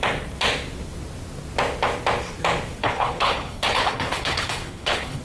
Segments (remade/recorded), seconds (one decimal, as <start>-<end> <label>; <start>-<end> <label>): 0.0-2.8 recorded; 2.8-5.2 remade